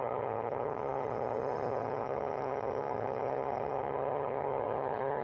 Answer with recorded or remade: remade